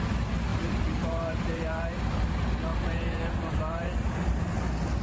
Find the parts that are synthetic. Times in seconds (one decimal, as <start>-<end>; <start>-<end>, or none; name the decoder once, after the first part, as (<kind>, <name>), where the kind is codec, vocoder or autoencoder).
0.5-2.3 (vocoder, BigVGAN v2); 2.7-4.4